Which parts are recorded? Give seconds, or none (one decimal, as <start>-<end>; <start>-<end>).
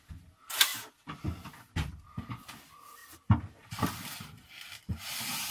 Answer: 0.0-3.0; 4.9-5.5